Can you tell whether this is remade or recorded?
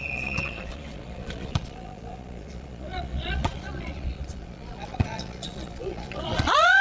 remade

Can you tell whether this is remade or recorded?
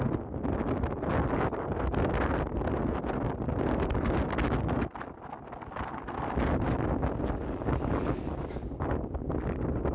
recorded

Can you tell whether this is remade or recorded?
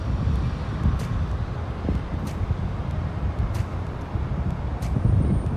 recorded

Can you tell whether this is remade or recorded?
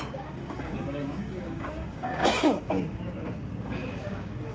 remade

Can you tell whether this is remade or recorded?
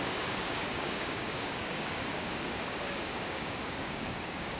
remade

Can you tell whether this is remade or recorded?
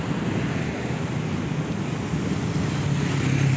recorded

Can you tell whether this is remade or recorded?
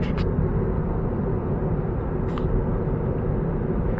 recorded